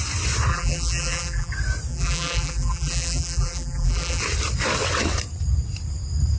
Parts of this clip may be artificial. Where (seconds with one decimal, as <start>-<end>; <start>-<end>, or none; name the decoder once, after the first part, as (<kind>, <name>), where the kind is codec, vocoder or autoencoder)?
0.5-1.5 (vocoder, BigVGAN v2); 1.9-4.2